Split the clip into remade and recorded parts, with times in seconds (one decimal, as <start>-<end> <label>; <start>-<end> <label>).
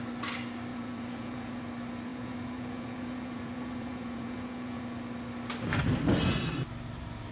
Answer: 0.0-0.7 recorded; 0.7-1.6 remade; 1.6-2.1 recorded; 2.1-4.8 remade; 4.8-7.3 recorded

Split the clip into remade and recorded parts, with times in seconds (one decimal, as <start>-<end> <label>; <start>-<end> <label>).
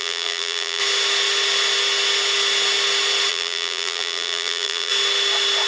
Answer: 0.0-0.8 remade; 0.8-3.3 recorded; 3.3-4.9 remade; 4.9-5.7 recorded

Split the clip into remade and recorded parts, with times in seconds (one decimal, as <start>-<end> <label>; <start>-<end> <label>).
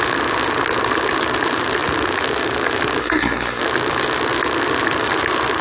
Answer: 0.0-3.0 recorded; 3.0-3.6 remade; 3.6-5.6 recorded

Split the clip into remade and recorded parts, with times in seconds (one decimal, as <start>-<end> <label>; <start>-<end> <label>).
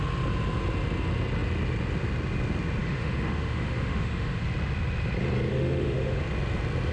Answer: 0.0-2.8 recorded; 2.8-4.4 remade; 4.4-5.5 recorded; 5.5-6.2 remade; 6.2-6.9 recorded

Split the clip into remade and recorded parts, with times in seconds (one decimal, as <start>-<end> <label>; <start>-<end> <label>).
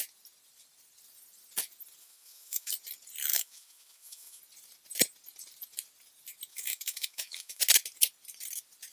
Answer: 0.0-2.0 recorded; 2.0-2.7 remade; 2.7-3.3 recorded; 3.3-4.4 remade; 4.4-6.5 recorded; 6.5-7.6 remade; 7.6-8.9 recorded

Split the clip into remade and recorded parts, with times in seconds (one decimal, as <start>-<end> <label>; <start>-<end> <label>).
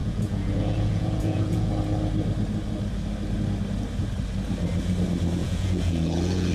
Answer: 0.0-1.7 remade; 1.7-5.4 recorded; 5.4-6.5 remade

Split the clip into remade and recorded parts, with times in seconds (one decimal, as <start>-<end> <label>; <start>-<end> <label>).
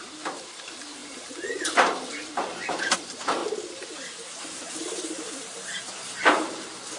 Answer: 0.0-3.4 remade; 3.4-4.4 recorded; 4.4-7.0 remade